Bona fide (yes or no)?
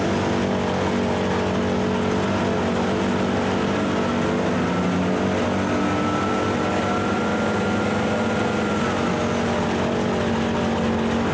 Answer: yes